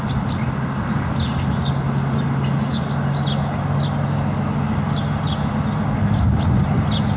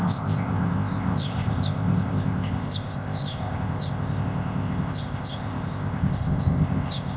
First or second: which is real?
first